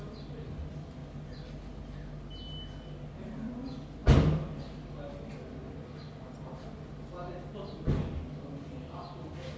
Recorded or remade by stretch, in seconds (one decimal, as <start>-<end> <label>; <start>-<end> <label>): 0.0-9.6 recorded